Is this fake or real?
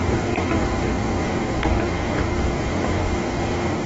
fake